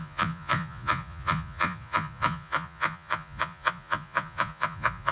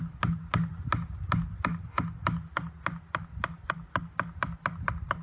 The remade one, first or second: first